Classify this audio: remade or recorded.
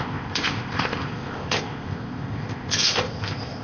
remade